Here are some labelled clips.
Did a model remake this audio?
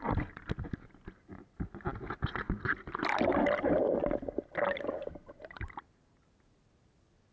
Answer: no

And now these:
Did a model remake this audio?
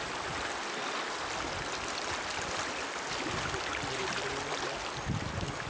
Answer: no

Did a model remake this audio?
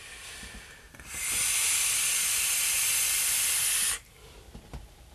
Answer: no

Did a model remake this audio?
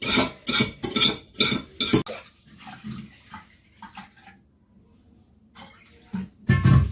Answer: no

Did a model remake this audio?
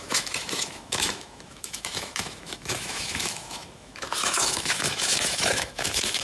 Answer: yes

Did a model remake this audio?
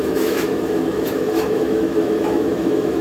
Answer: yes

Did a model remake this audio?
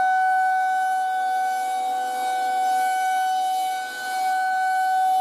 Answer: no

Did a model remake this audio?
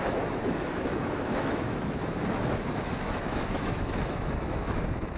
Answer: yes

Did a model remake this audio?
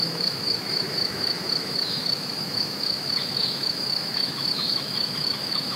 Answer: yes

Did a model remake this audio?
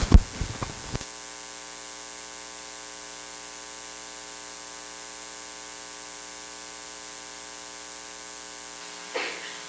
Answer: no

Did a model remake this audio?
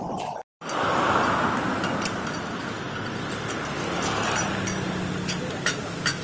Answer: no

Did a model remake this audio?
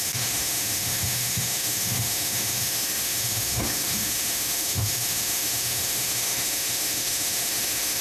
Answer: yes